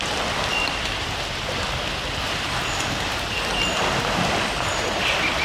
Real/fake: real